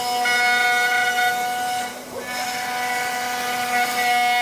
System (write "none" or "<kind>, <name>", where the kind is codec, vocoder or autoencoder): none